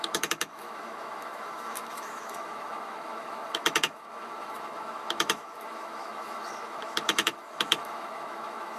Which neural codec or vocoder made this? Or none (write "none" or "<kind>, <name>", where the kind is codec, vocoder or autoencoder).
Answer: autoencoder, DAC-VAE